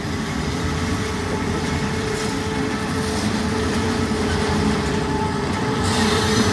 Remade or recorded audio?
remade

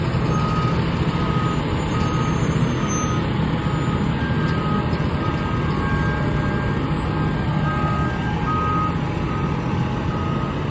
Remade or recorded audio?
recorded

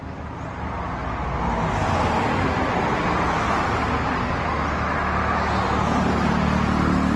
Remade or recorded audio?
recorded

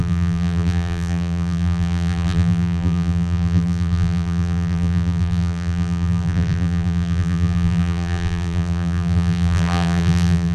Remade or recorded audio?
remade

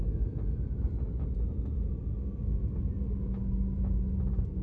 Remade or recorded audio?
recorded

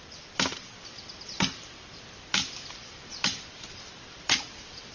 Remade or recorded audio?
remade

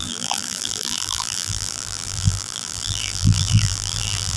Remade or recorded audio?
remade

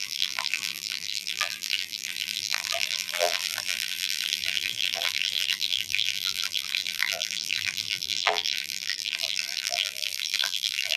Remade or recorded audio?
remade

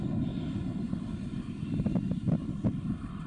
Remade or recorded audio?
remade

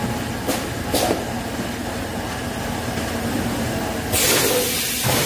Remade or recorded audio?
recorded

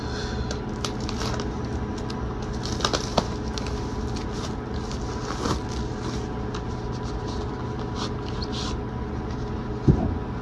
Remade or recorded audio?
recorded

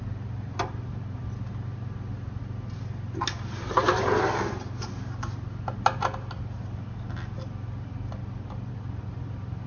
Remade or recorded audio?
recorded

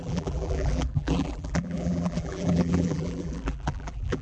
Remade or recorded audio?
remade